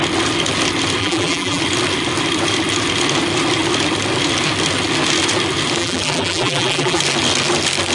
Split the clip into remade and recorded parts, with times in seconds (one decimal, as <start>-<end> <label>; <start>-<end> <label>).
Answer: 0.0-1.0 recorded; 1.0-1.6 remade; 1.6-5.8 recorded; 5.8-7.0 remade; 7.0-7.9 recorded